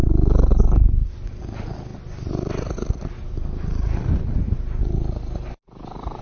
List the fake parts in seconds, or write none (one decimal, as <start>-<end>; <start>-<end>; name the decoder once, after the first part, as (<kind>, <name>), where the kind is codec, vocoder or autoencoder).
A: 1.9-5.0 (vocoder, BigVGAN v2)